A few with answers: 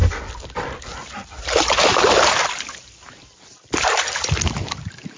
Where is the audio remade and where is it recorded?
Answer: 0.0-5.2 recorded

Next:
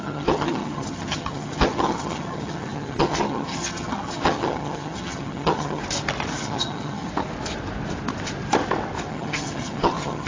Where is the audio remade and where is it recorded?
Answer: 0.0-5.8 remade; 5.8-6.3 recorded; 6.3-7.1 remade; 7.1-9.1 recorded; 9.1-10.3 remade

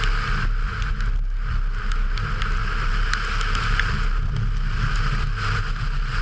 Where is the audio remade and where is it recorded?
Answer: 0.0-6.2 recorded